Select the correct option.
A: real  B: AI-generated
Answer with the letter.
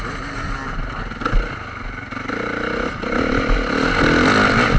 A